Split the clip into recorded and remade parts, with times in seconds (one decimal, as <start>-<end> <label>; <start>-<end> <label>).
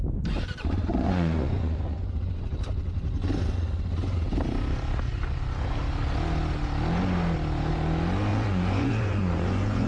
0.0-0.9 recorded; 0.9-2.5 remade; 2.5-8.3 recorded; 8.3-9.9 remade